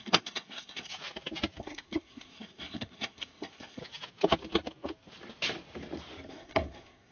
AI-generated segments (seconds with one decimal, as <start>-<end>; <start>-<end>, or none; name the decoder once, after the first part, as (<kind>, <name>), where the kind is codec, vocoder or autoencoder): 0.0-0.9 (codec, SNAC); 1.6-3.8; 6.3-7.1